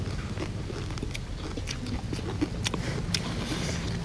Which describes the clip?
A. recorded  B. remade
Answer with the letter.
A